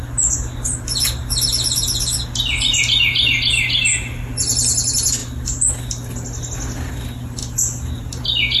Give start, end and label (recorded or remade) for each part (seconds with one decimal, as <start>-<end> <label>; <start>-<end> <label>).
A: 0.0-8.6 recorded